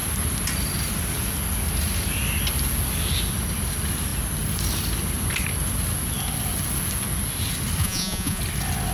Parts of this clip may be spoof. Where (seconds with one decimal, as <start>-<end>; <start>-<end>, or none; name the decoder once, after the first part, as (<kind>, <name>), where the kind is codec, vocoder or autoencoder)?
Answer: 7.8-8.4 (vocoder, Vocos)

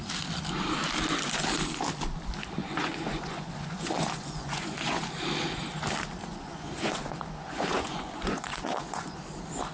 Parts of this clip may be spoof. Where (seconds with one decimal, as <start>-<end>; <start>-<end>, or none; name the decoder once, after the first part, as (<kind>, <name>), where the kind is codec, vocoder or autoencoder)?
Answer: 2.6-5.1 (vocoder, Vocos); 6.3-9.2

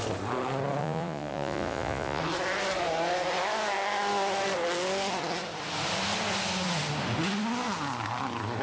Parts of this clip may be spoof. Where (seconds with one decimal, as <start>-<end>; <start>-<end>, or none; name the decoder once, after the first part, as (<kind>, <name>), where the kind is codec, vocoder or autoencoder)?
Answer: 0.8-2.2 (vocoder, Vocos)

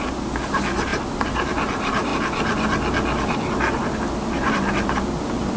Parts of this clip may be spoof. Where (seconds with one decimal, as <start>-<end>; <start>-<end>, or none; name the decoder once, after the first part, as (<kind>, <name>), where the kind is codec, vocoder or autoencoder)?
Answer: none

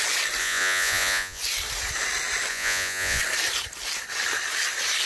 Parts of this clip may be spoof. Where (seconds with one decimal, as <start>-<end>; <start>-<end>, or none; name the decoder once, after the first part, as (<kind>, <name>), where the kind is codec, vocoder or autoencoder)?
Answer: 0.4-1.4 (vocoder, Vocos); 2.5-3.2

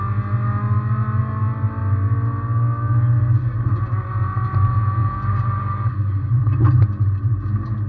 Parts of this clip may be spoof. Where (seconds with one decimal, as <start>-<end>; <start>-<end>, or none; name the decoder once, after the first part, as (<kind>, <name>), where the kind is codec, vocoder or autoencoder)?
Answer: none

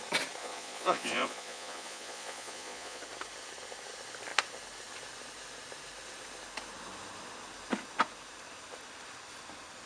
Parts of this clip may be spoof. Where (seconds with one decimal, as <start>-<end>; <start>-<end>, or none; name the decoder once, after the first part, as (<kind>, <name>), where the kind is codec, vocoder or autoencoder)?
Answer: 0.4-3.0 (vocoder, Vocos)